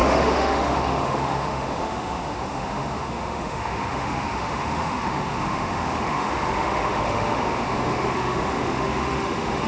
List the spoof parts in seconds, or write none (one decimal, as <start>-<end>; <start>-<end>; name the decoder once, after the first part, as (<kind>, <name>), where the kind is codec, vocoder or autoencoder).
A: 0.0-9.7 (autoencoder, DAC-VAE)